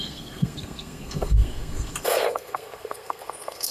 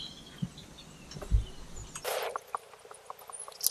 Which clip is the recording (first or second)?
second